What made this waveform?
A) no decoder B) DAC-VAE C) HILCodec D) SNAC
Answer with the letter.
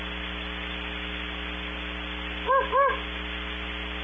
A